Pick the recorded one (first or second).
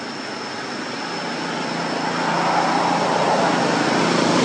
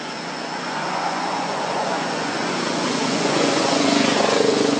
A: first